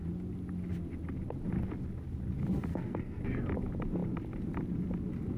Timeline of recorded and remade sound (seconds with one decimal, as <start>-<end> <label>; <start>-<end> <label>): 0.0-2.7 recorded; 2.7-3.2 remade; 3.2-5.4 recorded